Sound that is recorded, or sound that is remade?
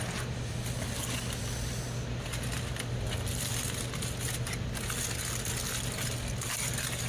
recorded